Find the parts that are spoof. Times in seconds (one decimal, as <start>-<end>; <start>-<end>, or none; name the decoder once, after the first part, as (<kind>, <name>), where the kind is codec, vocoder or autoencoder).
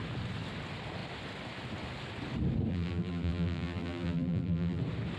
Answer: 2.7-4.8 (vocoder, BigVGAN v2)